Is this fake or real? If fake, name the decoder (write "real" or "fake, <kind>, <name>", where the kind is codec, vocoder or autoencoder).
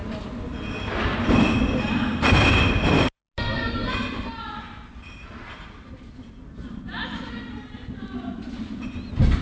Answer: real